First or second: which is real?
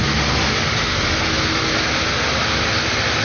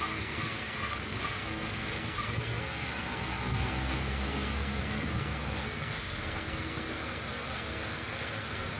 first